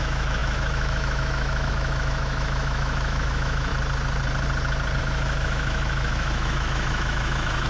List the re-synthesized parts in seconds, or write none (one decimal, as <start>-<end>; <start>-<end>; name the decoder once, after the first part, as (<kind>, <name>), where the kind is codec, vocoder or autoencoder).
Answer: 0.0-3.7 (autoencoder, DAC-VAE); 5.0-7.7